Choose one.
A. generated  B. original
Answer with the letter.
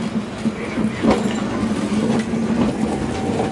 B